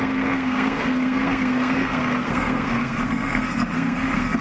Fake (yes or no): yes